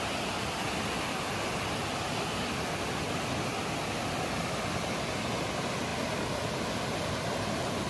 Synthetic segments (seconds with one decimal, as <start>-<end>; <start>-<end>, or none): none